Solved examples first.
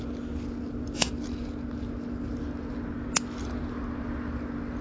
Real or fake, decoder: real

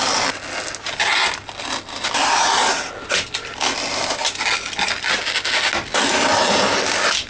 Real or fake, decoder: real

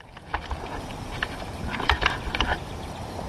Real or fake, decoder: fake, vocoder, BigVGAN v2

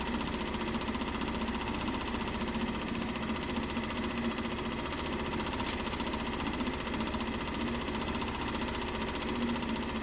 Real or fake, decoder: real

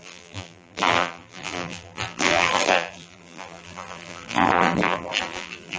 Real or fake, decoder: fake, vocoder, BigVGAN v2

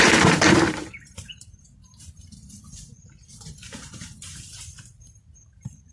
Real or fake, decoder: fake, vocoder, BigVGAN v2